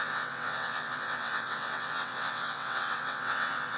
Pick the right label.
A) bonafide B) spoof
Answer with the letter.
B